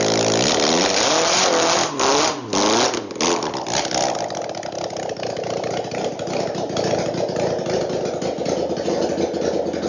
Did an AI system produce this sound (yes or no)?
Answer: no